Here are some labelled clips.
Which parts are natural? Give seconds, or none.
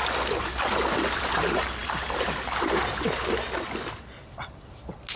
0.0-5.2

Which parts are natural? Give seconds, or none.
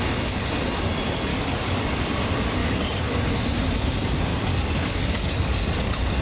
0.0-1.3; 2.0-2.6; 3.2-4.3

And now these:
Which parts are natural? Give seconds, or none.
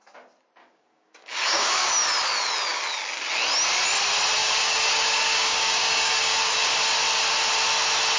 0.0-0.6; 1.9-4.4; 6.7-8.2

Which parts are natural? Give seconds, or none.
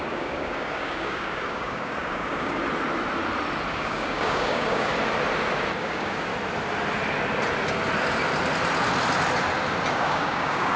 2.6-3.7; 4.9-5.8; 6.3-9.9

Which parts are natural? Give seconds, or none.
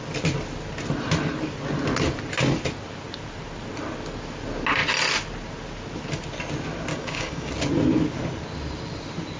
0.0-6.9; 7.5-9.4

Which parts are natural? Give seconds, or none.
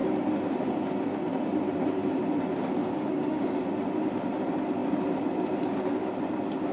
0.0-2.8; 3.6-6.7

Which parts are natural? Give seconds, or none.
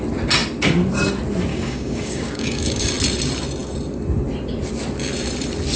0.0-1.5; 2.9-5.8